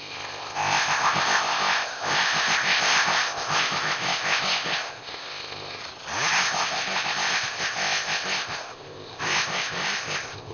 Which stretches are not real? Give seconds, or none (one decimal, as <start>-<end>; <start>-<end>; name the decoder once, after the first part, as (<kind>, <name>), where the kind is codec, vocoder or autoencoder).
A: 0.0-5.8 (codec, ZipCodec); 6.3-10.5